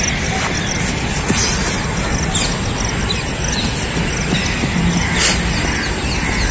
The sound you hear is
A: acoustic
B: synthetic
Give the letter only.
A